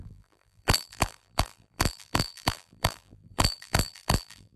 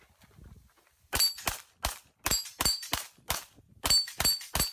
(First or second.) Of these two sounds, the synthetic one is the first